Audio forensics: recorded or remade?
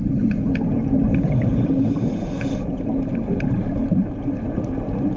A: remade